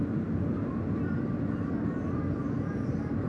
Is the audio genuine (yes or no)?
yes